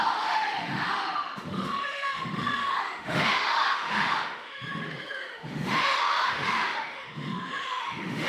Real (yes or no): no